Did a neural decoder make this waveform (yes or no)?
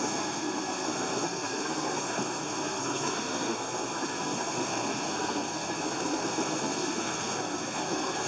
yes